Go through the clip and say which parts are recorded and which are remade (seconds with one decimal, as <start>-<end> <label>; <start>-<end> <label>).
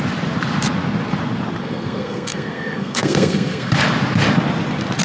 0.0-1.6 recorded; 1.6-3.7 remade; 3.7-5.0 recorded